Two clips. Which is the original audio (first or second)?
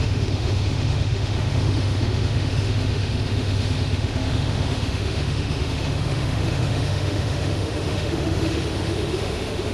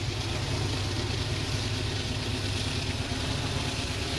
second